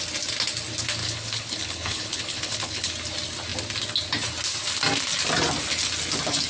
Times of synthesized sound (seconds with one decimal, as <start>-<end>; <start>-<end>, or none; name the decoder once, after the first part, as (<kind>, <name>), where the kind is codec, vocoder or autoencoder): 1.0-2.9 (codec, HILCodec)